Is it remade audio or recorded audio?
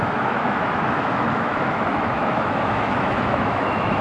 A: remade